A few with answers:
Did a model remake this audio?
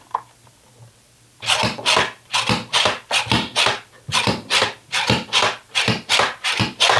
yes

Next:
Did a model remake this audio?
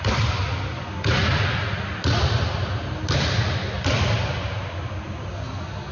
no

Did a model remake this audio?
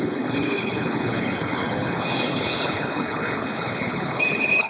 yes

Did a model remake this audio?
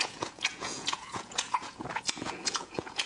yes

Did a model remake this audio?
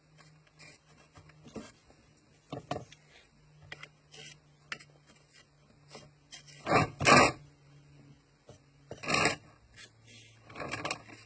no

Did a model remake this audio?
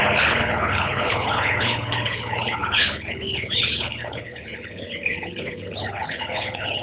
yes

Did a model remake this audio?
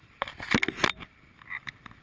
no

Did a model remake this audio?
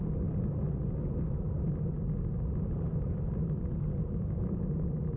yes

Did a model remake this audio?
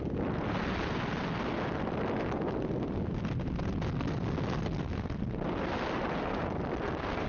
no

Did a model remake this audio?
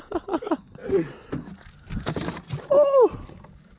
no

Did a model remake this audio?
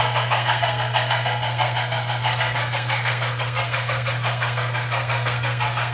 yes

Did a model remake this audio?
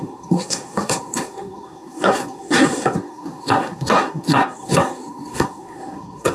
yes